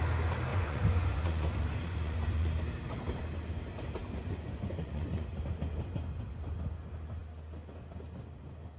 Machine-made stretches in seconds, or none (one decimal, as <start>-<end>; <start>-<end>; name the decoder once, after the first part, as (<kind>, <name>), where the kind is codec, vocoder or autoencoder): 0.5-2.5 (vocoder, Vocos); 4.0-5.3